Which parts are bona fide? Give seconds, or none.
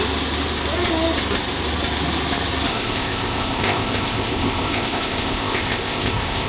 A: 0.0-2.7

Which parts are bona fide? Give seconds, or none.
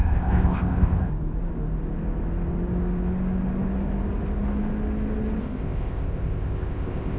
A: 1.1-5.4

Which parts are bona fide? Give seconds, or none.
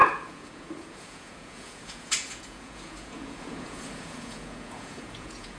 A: none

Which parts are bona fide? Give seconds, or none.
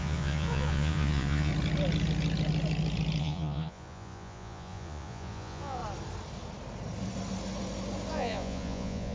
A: 1.5-3.2; 5.8-8.1